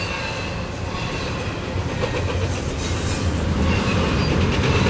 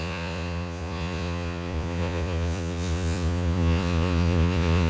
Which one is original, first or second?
first